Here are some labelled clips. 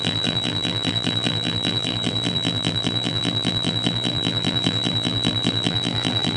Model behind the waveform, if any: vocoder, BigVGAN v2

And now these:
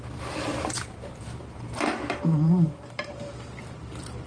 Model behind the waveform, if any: vocoder, BigVGAN v2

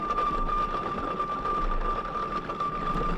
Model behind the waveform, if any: vocoder, BigVGAN v2